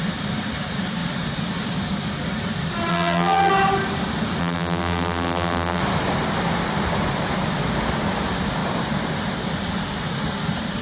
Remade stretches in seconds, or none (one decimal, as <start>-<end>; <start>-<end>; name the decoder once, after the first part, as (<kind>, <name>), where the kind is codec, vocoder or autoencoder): 2.9-3.5 (vocoder, BigVGAN v2); 4.4-5.8